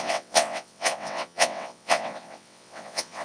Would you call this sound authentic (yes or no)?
no